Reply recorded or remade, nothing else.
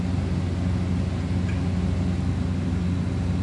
recorded